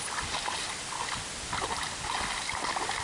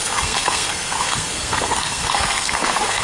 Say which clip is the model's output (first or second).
second